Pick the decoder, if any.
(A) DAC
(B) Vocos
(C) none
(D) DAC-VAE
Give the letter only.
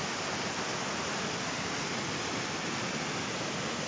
C